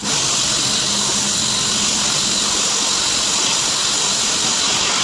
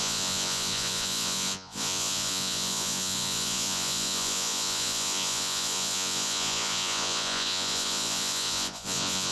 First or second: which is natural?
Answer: first